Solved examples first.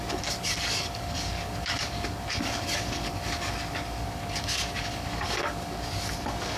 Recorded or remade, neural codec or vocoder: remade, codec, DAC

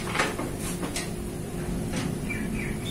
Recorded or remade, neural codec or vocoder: recorded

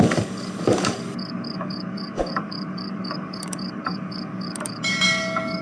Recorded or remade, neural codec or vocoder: remade, codec, DAC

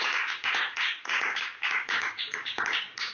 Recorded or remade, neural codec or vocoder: remade, codec, DAC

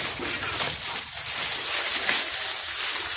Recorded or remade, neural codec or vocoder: recorded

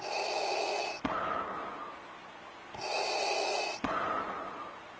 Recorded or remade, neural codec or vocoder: recorded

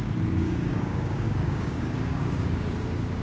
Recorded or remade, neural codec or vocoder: remade, codec, DAC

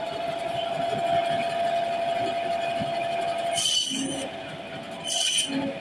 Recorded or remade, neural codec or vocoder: recorded